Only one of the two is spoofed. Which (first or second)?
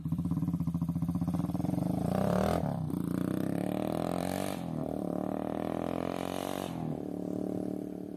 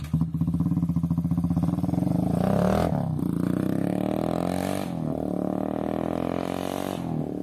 first